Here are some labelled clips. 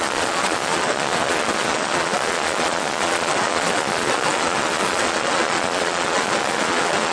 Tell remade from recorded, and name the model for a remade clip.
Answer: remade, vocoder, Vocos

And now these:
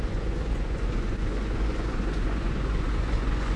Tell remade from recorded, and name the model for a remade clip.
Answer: remade, vocoder, Vocos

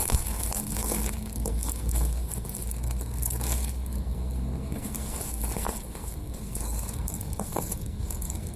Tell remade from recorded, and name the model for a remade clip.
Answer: remade, codec, SNAC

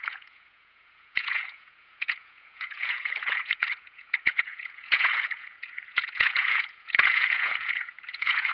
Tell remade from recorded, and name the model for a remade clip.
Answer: remade, vocoder, Vocos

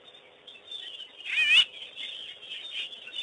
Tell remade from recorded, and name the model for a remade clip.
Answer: recorded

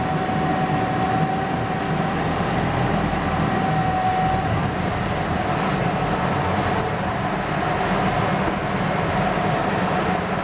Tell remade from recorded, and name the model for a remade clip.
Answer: recorded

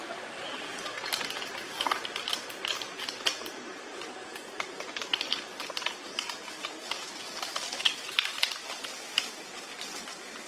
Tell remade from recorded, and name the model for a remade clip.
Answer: recorded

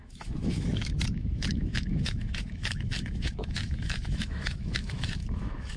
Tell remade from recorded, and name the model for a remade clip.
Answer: remade, autoencoder, DAC-VAE